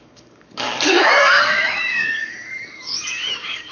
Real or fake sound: fake